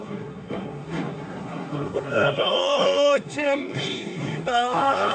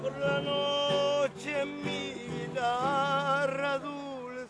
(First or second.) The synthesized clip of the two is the first